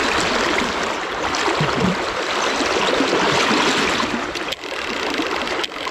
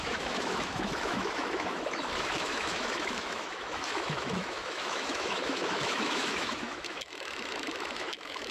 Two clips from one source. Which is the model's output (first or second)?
second